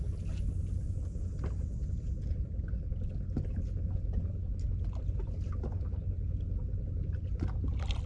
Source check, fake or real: real